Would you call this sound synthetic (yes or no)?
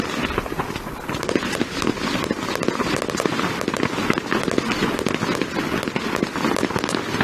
no